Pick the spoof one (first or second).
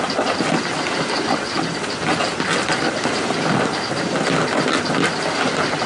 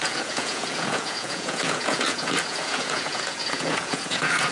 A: second